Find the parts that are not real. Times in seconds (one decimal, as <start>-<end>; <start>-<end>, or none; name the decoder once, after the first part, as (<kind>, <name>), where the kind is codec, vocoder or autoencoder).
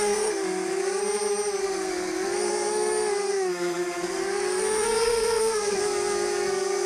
0.0-1.0 (codec, SNAC); 1.6-6.9